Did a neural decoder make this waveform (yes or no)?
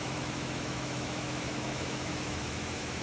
yes